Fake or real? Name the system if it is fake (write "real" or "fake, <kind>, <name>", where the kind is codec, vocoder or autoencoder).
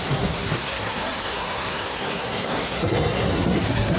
fake, codec, SNAC